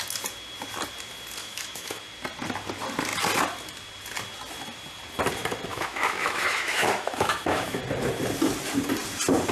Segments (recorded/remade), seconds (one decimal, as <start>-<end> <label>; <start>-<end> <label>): 0.0-1.4 recorded; 1.4-2.0 remade; 2.0-5.7 recorded; 5.7-7.8 remade; 7.8-9.5 recorded